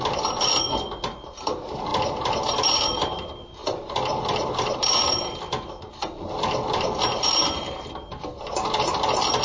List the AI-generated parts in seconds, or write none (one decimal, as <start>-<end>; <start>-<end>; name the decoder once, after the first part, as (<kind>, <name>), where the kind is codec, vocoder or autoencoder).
none